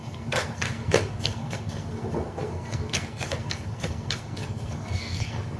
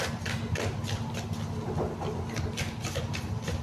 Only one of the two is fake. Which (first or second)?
first